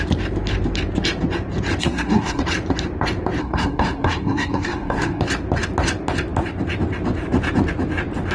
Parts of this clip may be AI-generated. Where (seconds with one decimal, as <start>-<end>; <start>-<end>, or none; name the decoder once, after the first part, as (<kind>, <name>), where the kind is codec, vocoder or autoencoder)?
1.8-2.4 (codec, SNAC); 3.4-5.2